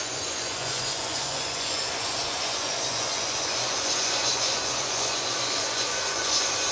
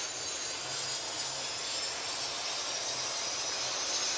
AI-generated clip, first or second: first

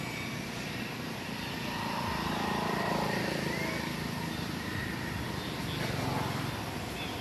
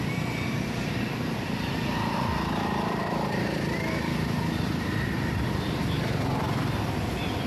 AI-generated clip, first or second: second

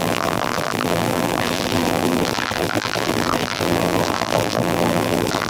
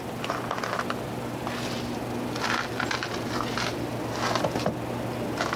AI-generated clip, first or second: first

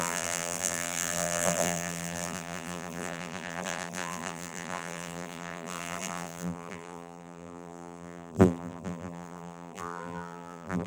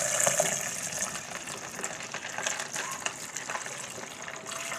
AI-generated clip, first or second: first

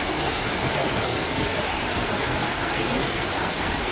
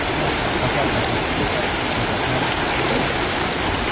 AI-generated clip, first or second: first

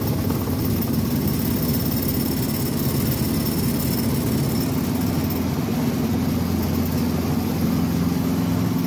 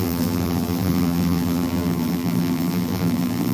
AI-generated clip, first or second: second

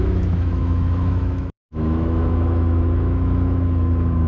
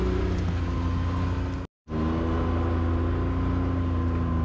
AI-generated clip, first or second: first